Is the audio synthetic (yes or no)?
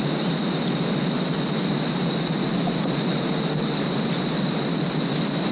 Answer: no